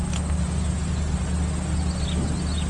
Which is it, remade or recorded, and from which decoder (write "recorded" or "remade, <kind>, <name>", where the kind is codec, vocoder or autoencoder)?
recorded